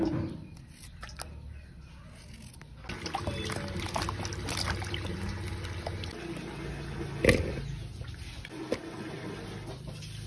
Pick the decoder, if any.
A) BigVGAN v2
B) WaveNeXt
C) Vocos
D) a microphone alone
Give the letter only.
D